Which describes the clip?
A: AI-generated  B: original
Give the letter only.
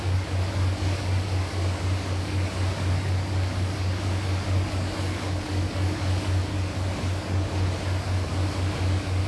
A